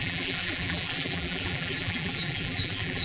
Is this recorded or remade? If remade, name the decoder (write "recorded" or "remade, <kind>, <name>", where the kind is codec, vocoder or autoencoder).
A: remade, vocoder, BigVGAN v2